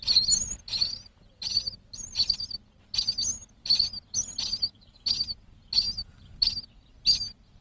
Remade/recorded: recorded